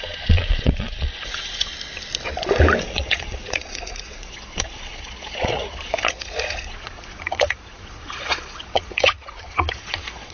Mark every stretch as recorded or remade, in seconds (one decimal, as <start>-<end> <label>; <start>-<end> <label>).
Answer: 0.0-1.7 remade; 1.7-2.8 recorded; 2.8-10.3 remade